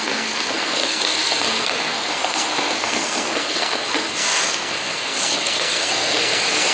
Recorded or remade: remade